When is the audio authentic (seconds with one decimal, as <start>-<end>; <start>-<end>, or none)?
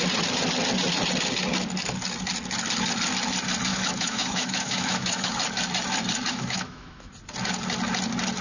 0.0-3.7; 5.3-6.3; 7.1-8.4